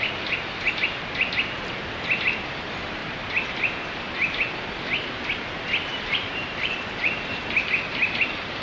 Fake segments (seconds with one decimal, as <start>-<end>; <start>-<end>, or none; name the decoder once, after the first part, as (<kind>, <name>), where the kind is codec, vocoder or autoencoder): 3.0-4.0 (vocoder, BigVGAN v2); 5.9-7.7